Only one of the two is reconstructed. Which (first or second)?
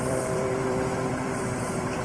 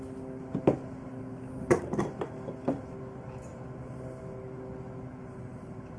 first